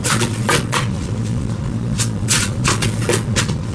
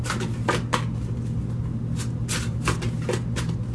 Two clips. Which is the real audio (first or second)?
second